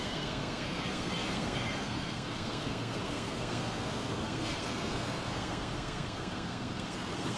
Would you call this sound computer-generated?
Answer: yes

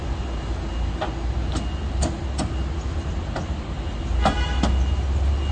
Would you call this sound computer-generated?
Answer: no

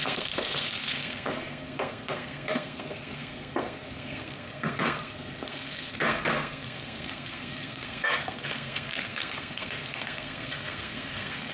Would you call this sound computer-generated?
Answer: yes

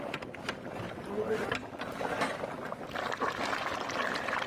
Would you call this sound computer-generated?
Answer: no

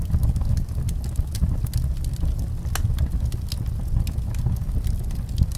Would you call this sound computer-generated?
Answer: no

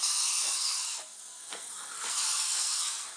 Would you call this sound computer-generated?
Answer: yes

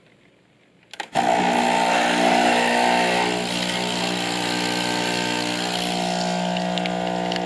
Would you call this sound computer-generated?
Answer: no